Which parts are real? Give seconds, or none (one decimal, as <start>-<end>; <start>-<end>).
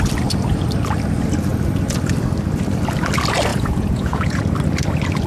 0.0-3.5; 4.4-5.3